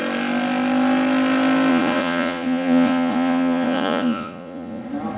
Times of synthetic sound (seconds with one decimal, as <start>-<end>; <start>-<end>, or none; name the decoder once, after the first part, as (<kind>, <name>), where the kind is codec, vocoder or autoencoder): 1.7-4.8 (vocoder, Vocos)